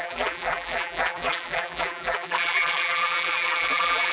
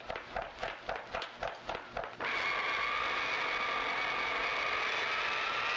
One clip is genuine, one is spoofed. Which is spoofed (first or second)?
first